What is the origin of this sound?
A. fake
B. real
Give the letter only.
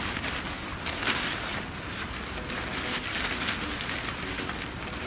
B